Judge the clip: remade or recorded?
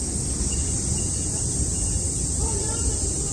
remade